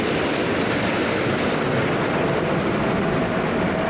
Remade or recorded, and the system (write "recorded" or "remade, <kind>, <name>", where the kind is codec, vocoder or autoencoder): remade, vocoder, BigVGAN v2